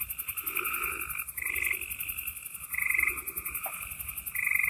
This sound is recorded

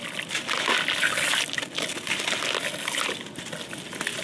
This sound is recorded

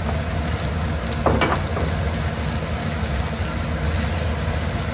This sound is recorded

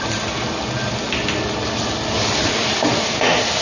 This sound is recorded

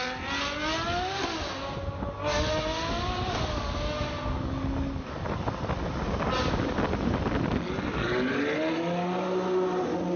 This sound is recorded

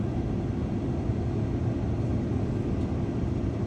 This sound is recorded